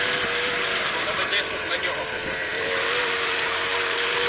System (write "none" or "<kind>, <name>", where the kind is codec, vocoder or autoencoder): vocoder, BigVGAN v2